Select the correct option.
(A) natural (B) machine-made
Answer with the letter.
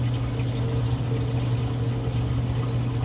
A